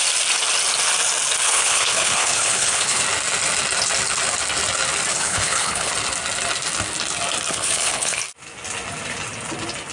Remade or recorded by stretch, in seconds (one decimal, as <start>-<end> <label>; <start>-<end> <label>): 0.0-1.4 recorded; 1.4-3.0 remade; 3.0-5.1 recorded; 5.1-5.9 remade; 5.9-7.5 recorded; 7.5-8.2 remade; 8.2-9.9 recorded